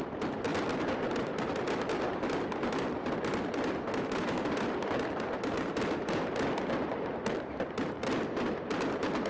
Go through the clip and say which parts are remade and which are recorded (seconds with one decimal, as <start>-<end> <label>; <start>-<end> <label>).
0.0-0.5 remade; 0.5-1.1 recorded; 1.1-9.3 remade